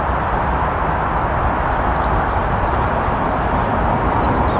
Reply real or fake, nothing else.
real